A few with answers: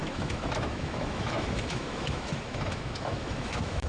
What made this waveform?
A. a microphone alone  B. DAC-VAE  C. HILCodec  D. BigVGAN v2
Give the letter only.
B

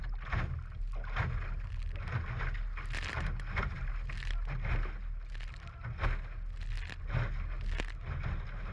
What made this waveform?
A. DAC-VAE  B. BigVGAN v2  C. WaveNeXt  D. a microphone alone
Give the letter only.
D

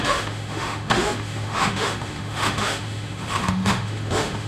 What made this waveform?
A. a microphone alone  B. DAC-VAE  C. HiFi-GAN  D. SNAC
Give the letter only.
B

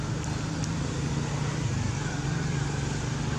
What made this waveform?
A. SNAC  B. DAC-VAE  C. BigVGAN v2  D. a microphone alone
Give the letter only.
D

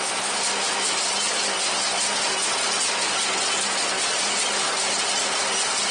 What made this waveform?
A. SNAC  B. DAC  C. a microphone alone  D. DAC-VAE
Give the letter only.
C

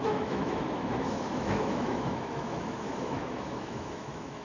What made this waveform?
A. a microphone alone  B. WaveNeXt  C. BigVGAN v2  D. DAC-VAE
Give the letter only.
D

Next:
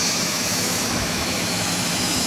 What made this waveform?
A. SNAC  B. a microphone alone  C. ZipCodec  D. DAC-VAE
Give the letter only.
D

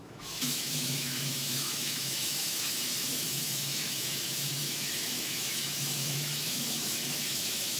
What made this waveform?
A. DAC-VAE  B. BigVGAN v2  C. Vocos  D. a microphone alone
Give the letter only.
A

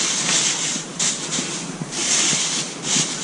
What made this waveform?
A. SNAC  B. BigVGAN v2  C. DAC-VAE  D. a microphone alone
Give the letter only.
D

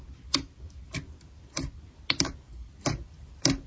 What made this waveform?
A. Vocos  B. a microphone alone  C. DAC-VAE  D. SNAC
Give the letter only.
B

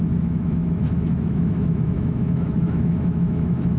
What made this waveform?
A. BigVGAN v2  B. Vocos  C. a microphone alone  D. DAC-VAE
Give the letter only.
D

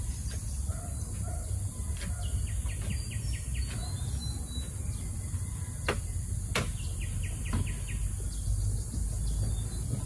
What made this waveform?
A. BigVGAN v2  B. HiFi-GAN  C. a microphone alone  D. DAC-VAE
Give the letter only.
C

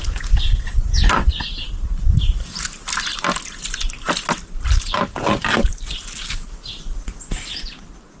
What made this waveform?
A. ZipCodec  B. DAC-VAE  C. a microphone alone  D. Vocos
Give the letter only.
C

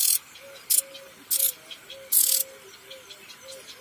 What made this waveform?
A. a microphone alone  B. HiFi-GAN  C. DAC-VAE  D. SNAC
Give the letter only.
A